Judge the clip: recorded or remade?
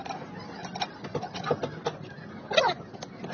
recorded